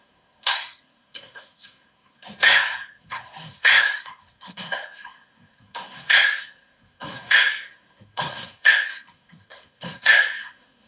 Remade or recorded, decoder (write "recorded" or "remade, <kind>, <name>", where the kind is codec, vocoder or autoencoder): remade, codec, SNAC